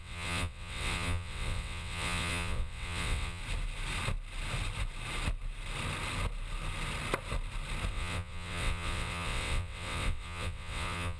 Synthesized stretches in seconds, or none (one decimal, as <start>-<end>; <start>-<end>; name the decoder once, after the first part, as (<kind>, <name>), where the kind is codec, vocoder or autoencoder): 0.0-3.4 (vocoder, WaveNeXt); 7.9-11.2